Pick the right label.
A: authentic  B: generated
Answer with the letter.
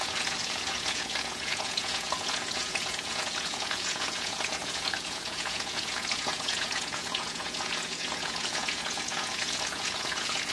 B